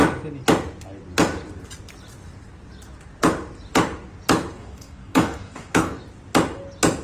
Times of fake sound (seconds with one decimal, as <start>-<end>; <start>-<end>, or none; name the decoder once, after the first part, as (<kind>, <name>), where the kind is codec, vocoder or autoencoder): 4.6-6.0 (codec, DAC)